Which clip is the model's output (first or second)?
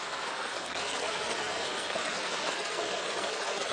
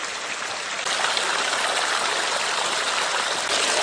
first